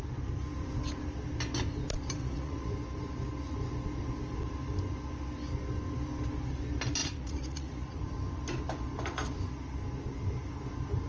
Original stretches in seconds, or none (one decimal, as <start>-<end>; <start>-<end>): 0.0-2.2; 2.7-7.0; 8.0-11.1